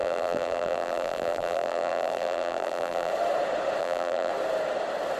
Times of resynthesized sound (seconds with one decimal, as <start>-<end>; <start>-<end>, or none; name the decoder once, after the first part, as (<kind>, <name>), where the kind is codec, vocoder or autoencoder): 0.0-3.1 (vocoder, BigVGAN v2); 3.8-4.3